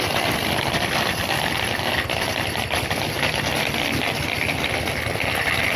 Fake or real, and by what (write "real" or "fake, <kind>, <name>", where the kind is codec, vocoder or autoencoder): real